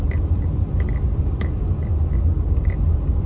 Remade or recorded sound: recorded